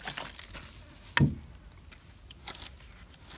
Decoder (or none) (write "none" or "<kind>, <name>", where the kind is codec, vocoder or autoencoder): none